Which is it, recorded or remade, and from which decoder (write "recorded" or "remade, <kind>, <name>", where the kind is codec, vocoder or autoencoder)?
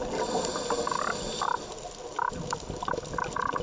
recorded